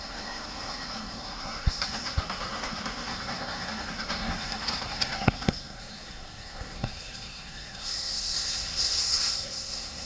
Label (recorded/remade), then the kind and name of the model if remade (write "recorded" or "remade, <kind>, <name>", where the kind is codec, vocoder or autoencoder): remade, codec, SNAC